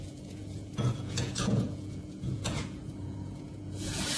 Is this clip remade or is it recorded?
remade